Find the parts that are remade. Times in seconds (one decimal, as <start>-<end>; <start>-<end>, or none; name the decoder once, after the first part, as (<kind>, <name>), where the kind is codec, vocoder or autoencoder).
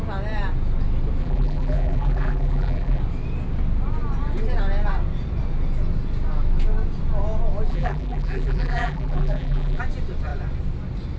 1.2-3.0 (vocoder, BigVGAN v2); 7.7-9.8